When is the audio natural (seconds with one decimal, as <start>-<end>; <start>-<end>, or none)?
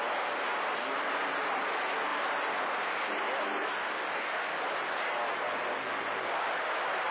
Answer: 0.0-7.1